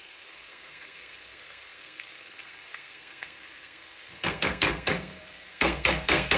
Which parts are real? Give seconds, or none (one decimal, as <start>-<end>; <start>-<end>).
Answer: none

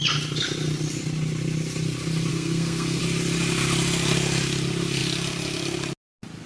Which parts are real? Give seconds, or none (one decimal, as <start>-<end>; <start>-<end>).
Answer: 0.0-2.3; 3.0-6.5

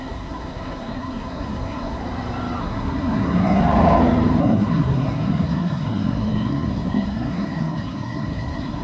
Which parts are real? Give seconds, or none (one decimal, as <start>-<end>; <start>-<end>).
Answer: 2.0-2.6; 3.6-4.4

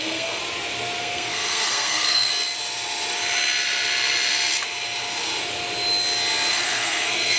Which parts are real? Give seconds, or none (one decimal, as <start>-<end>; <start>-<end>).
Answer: 0.4-1.0; 2.3-6.5

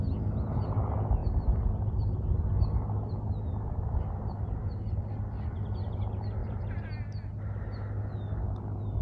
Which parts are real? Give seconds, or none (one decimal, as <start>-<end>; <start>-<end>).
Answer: 0.0-9.0

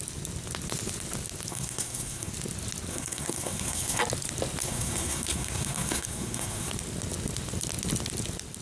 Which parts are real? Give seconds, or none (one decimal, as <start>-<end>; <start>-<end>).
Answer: 0.0-1.5; 2.3-2.9; 4.0-4.6; 6.7-8.6

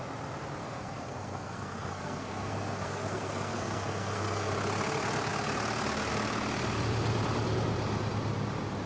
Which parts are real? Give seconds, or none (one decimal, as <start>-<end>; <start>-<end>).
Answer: 0.0-0.6; 4.5-8.9

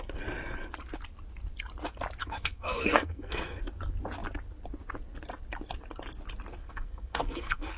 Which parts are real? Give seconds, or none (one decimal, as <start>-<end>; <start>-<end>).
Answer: 0.0-2.2; 3.6-6.6